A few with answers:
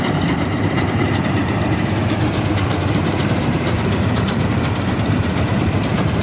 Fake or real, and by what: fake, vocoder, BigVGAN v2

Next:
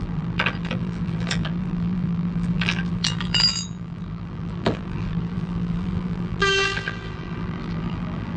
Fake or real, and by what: fake, vocoder, BigVGAN v2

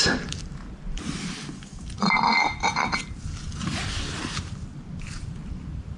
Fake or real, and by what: fake, vocoder, BigVGAN v2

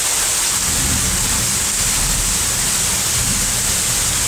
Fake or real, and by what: real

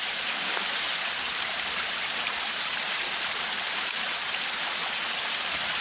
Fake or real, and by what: fake, vocoder, BigVGAN v2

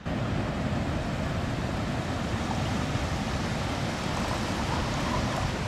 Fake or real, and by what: real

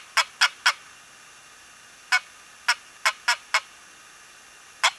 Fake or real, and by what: real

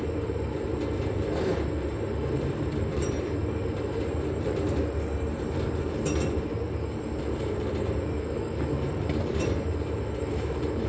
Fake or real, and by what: fake, vocoder, BigVGAN v2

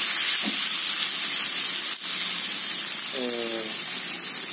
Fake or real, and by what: real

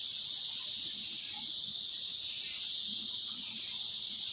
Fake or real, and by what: real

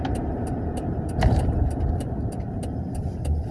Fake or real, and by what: fake, vocoder, BigVGAN v2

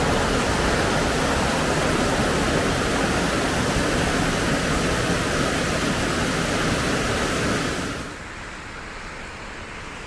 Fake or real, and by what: real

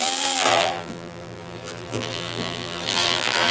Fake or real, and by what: fake, vocoder, BigVGAN v2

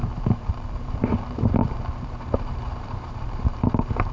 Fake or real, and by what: fake, vocoder, BigVGAN v2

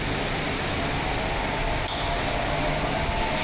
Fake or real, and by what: real